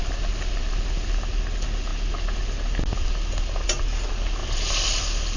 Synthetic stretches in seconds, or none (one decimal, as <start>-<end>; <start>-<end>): 0.0-0.7; 4.4-5.0